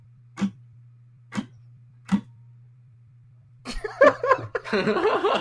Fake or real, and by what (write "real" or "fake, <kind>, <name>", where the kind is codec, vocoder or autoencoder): fake, vocoder, BigVGAN v2